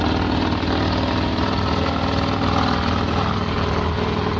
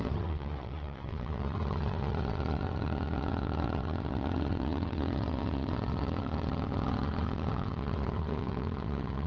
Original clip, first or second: first